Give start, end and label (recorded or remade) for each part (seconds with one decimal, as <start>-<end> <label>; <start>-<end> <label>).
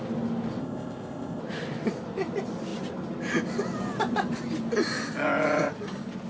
0.0-0.6 recorded; 0.6-1.4 remade; 1.4-6.3 recorded